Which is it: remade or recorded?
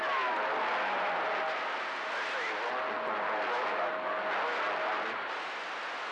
recorded